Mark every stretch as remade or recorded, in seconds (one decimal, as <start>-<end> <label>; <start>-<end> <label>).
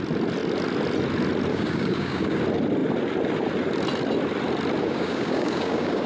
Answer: 0.0-1.5 recorded; 1.5-2.4 remade; 2.4-4.8 recorded; 4.8-6.1 remade